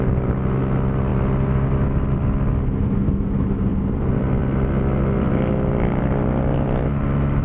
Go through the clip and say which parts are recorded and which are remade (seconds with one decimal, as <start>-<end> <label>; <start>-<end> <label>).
0.0-7.4 recorded